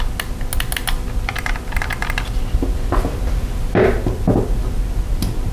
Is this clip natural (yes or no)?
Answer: yes